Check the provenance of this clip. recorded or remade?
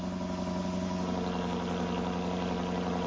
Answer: recorded